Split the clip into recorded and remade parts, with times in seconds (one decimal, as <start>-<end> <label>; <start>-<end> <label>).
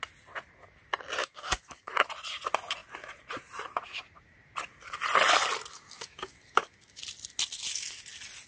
0.0-1.2 recorded; 1.2-1.9 remade; 1.9-5.7 recorded; 5.7-7.0 remade; 7.0-8.5 recorded